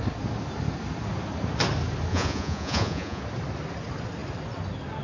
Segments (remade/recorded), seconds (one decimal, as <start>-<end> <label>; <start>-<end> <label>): 0.0-2.1 recorded; 2.1-3.2 remade; 3.2-5.0 recorded